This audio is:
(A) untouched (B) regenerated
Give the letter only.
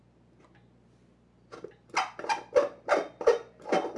A